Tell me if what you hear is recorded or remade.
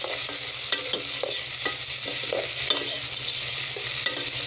recorded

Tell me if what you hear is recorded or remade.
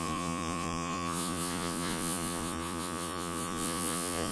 remade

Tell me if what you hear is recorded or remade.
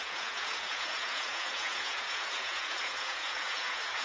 remade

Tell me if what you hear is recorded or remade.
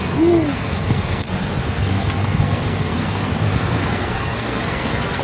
remade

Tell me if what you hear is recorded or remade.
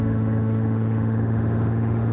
remade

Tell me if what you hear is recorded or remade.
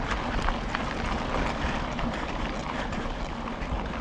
recorded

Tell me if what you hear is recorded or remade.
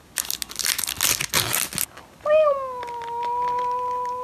recorded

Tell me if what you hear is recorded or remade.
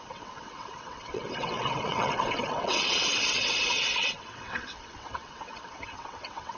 remade